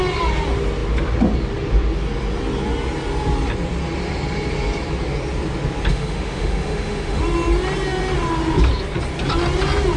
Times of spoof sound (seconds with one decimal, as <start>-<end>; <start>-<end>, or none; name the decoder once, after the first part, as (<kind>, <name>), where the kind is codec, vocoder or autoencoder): 5.9-7.2 (autoencoder, DAC-VAE)

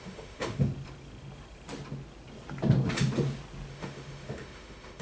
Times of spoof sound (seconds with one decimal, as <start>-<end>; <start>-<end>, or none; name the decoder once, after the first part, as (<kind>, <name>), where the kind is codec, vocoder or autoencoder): 0.0-0.7 (autoencoder, DAC-VAE); 3.7-5.0

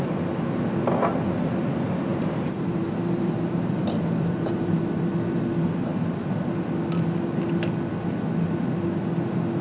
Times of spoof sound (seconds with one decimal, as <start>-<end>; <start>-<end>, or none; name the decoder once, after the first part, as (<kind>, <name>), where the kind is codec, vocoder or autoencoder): 2.1-4.8 (vocoder, BigVGAN v2)

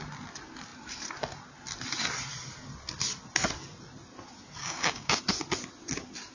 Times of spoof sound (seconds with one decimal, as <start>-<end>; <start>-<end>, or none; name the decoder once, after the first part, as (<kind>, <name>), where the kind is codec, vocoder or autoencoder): 4.6-5.2 (codec, DAC)

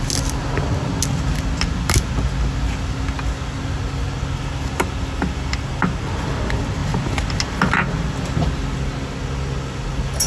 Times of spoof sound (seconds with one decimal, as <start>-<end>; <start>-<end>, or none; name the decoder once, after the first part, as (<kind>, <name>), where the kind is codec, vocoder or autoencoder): none